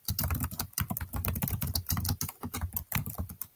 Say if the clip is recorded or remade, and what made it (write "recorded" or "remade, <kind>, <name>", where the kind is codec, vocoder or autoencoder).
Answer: recorded